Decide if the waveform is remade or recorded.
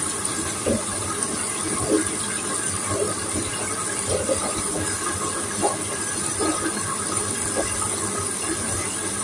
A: recorded